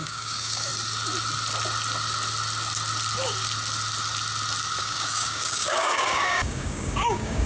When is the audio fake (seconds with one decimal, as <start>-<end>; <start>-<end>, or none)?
0.0-0.7; 4.8-7.5